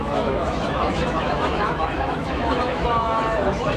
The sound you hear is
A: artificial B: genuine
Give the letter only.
A